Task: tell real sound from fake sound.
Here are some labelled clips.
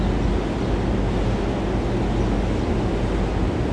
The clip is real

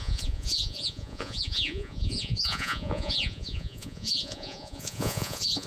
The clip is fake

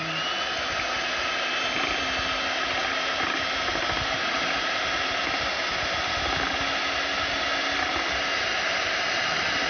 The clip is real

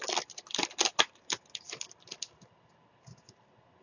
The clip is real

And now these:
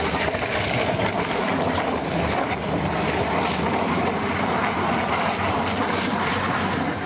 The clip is fake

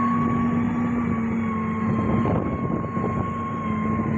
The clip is real